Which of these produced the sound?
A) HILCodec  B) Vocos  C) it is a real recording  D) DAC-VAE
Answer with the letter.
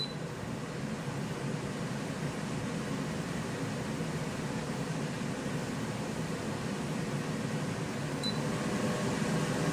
C